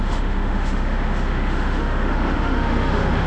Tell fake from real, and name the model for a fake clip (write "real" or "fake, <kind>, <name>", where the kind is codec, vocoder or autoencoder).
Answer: fake, autoencoder, DAC-VAE